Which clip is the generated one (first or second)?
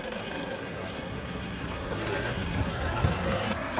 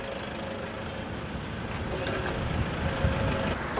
first